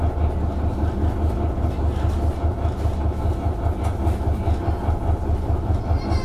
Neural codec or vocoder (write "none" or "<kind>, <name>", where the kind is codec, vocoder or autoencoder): none